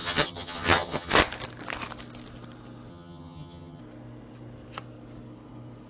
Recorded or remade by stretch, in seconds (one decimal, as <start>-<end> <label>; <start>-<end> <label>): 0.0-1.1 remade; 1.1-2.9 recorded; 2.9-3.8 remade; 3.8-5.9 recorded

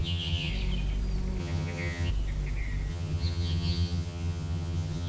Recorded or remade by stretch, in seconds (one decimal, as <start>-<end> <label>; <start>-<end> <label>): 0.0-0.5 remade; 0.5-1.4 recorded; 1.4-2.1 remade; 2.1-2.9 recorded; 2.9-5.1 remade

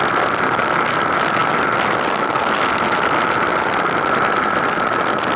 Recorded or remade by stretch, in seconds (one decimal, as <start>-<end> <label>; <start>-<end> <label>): 0.0-5.4 recorded

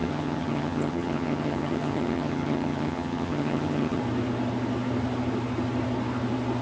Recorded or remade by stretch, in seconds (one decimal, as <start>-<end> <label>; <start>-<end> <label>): 0.0-4.0 remade; 4.0-6.6 recorded

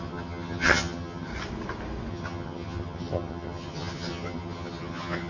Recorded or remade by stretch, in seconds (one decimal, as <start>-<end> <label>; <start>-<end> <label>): 0.0-1.3 remade; 1.3-2.1 recorded; 2.1-5.3 remade

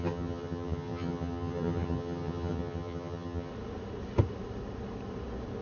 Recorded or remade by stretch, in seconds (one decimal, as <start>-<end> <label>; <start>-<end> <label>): 0.0-3.5 remade; 3.5-5.6 recorded